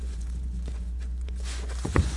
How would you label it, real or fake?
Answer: fake